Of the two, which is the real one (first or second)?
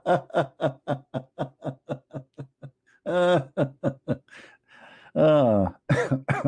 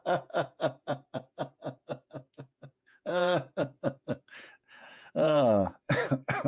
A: first